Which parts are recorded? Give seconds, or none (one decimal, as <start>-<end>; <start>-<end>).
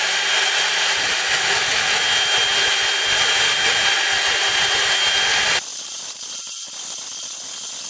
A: 0.0-5.7; 6.4-7.9